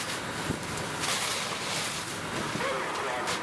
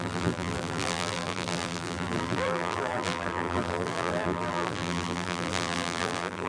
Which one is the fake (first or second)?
second